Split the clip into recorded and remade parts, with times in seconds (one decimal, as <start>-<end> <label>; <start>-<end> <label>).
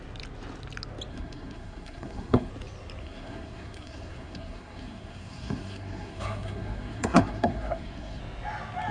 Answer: 0.0-1.1 recorded; 1.1-2.5 remade; 2.5-3.0 recorded; 3.0-8.2 remade; 8.2-8.9 recorded